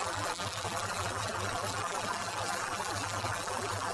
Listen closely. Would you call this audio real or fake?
fake